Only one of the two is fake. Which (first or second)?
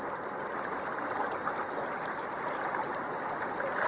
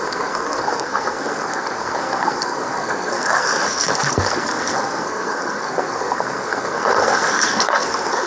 second